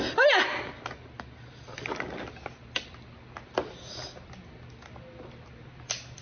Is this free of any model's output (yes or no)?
yes